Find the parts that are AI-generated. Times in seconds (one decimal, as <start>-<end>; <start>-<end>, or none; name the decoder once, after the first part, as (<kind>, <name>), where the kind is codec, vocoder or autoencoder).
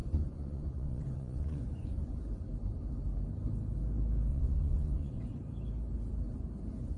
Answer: 0.0-2.2 (vocoder, Vocos); 4.3-5.2